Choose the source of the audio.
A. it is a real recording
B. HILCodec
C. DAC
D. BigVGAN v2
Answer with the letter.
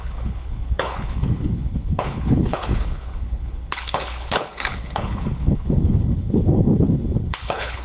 B